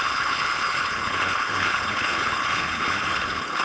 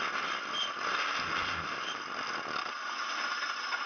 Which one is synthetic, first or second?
first